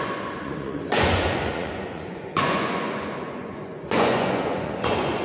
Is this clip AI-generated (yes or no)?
yes